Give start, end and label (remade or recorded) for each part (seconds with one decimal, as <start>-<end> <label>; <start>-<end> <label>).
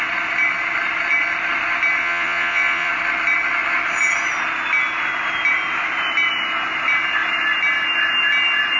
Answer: 0.0-2.0 recorded; 2.0-2.9 remade; 2.9-8.8 recorded